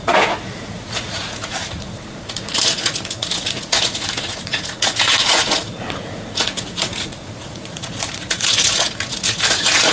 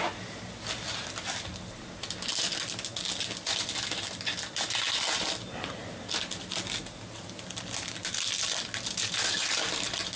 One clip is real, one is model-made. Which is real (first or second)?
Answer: second